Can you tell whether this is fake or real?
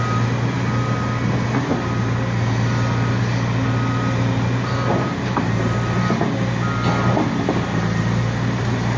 real